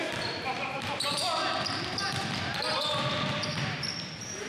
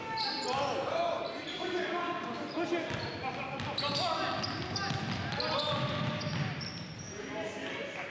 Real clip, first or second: second